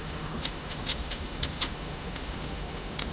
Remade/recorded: remade